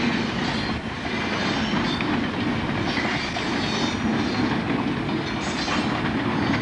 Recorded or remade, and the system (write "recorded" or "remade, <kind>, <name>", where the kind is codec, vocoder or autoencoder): recorded